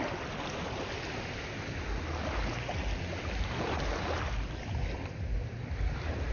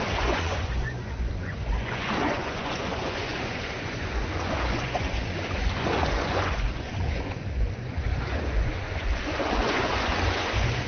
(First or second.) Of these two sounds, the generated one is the second